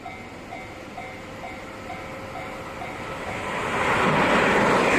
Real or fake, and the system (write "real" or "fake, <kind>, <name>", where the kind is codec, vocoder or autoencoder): real